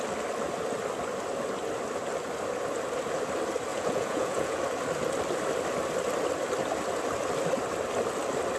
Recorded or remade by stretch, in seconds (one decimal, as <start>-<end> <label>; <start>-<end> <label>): 0.0-3.7 recorded; 3.7-4.6 remade; 4.6-8.6 recorded